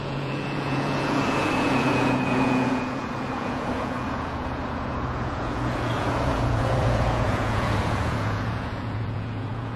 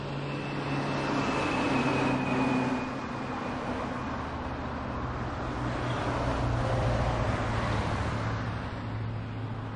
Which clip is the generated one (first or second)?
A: first